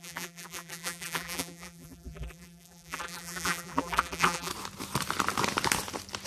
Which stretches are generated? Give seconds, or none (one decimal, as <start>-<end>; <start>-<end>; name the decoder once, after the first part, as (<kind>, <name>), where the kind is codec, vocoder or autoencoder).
0.0-4.5 (vocoder, BigVGAN v2)